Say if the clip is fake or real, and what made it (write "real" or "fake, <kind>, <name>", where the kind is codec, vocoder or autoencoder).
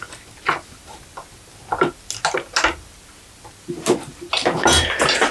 real